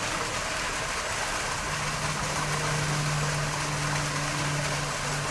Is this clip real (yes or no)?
yes